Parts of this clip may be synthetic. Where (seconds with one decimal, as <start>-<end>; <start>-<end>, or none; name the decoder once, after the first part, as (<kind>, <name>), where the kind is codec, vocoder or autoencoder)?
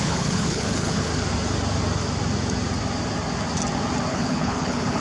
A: 0.0-1.1 (codec, HILCodec); 4.1-5.0